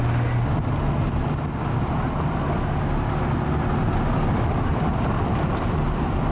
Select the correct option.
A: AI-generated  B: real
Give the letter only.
B